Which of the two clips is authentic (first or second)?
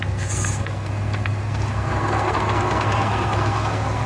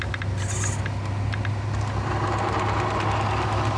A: second